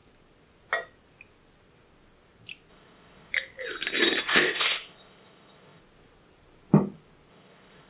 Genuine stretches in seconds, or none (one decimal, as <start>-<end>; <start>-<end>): 0.0-2.7; 3.3-4.3; 5.8-7.3